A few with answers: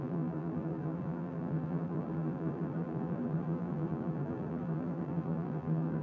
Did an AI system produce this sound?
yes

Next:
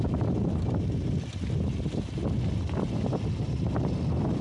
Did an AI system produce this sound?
no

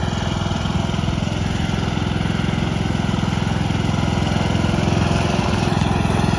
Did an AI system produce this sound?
no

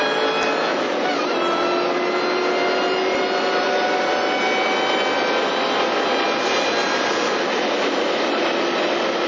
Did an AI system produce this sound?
no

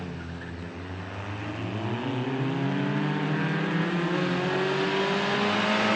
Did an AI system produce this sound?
no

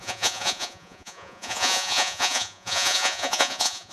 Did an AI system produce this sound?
yes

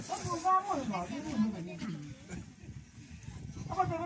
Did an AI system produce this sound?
no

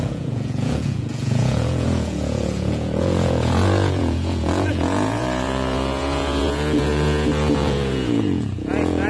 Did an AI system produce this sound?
yes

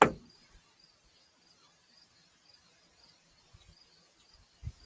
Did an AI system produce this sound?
no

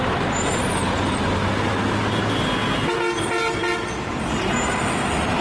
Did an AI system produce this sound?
no